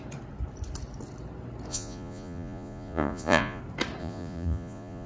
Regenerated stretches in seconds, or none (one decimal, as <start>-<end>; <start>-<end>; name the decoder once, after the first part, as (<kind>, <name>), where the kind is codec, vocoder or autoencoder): 1.7-3.6 (vocoder, Vocos); 4.0-5.1